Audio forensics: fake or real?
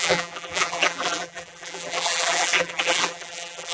fake